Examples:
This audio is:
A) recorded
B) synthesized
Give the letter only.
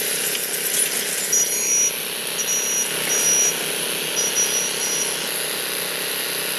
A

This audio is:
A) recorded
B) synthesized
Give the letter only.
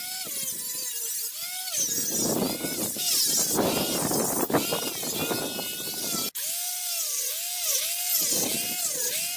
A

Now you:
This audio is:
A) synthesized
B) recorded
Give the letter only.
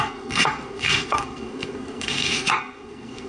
A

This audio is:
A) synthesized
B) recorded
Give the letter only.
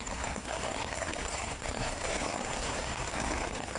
A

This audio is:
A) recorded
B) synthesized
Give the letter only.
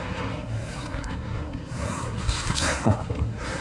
B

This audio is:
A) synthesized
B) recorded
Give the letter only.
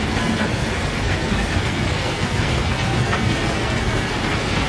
A